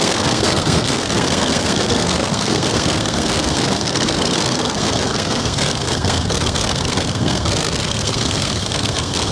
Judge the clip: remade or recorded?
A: remade